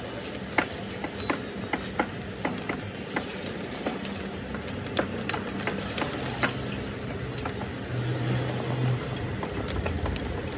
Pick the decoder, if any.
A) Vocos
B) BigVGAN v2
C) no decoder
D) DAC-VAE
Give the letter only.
C